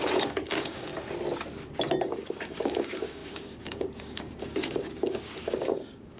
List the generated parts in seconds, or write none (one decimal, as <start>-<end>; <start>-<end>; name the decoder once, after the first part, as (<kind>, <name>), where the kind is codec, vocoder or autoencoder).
0.0-0.9 (codec, DAC); 2.0-6.2